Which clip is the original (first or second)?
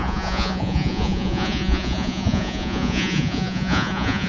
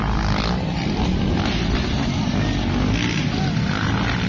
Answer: second